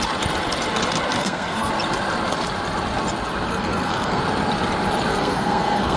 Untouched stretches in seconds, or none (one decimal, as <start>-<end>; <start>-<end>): 0.0-1.2; 1.7-3.5; 4.2-5.1